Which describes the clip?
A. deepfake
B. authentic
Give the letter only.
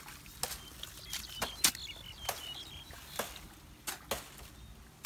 B